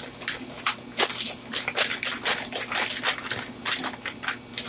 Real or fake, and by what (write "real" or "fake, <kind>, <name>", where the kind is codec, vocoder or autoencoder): real